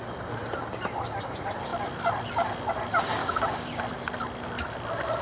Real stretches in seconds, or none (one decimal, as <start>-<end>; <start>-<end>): 0.0-3.2; 3.8-5.2